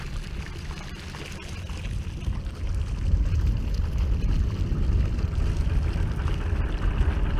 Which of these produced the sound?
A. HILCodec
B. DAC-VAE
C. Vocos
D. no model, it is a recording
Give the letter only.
D